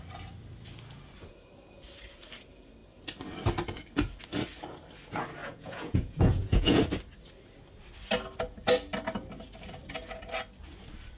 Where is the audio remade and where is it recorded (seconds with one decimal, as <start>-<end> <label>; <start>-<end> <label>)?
0.0-5.4 recorded; 5.4-6.8 remade; 6.8-11.2 recorded